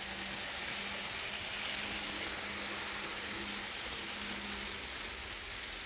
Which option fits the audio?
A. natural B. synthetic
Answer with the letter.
A